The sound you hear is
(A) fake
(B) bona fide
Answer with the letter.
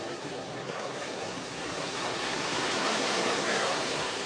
A